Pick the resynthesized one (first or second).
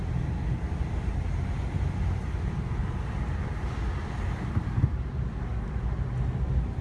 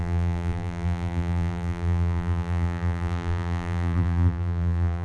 second